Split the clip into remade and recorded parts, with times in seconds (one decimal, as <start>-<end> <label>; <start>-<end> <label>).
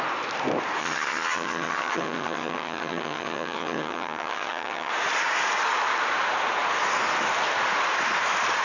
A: 0.0-0.8 recorded; 0.8-4.9 remade; 4.9-8.6 recorded